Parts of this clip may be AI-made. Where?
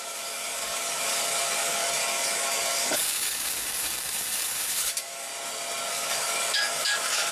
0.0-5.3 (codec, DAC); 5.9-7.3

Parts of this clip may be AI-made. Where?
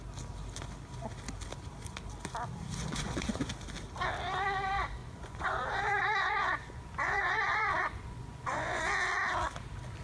2.8-3.5 (vocoder, Vocos); 5.0-8.9